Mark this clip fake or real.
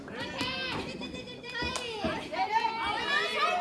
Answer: real